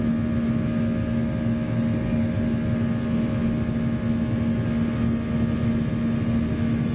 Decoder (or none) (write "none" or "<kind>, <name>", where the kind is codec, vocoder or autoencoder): none